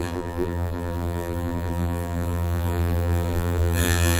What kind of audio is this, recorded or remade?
remade